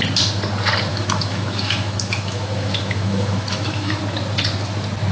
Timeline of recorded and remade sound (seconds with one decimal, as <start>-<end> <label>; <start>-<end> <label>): 0.0-0.9 recorded; 0.9-4.0 remade; 4.0-5.1 recorded